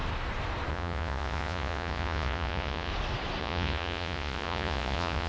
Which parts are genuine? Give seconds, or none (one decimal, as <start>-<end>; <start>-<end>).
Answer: 0.0-0.7; 2.9-3.4